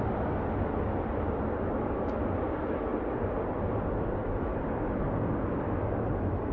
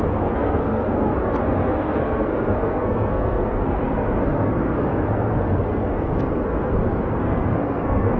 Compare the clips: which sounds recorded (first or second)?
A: first